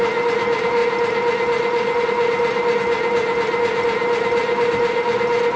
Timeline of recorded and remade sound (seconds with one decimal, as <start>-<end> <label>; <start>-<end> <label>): 0.0-5.6 recorded